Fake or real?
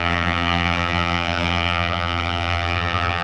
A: fake